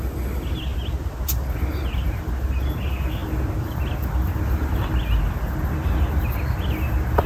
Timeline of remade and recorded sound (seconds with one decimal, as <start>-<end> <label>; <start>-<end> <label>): 0.0-7.3 recorded